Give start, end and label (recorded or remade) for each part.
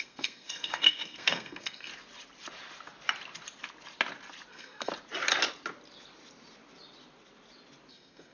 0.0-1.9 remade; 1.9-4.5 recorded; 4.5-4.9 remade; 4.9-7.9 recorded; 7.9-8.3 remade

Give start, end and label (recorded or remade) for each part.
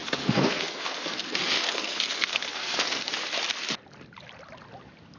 0.0-3.1 remade; 3.1-5.2 recorded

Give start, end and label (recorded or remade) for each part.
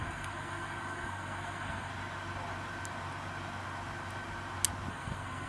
0.0-1.9 remade; 1.9-4.9 recorded; 4.9-5.5 remade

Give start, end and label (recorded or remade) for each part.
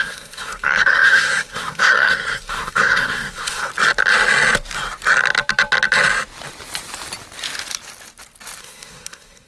0.0-3.7 remade; 3.7-8.6 recorded; 8.6-9.5 remade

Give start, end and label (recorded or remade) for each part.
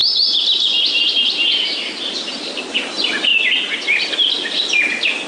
0.0-5.3 recorded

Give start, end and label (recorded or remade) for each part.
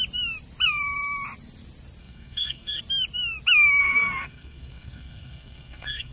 0.0-2.0 recorded; 2.0-2.8 remade; 2.8-3.8 recorded; 3.8-6.1 remade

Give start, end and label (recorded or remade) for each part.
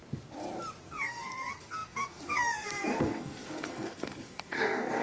0.0-0.8 recorded; 0.8-5.0 remade